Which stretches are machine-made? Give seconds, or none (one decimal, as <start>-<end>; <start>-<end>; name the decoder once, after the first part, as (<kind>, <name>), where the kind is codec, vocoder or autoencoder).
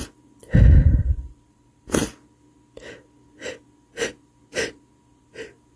0.8-2.0 (vocoder, BigVGAN v2)